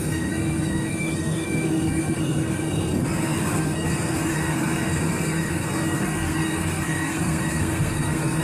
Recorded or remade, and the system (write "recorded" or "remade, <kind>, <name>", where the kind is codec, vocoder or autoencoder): remade, codec, SNAC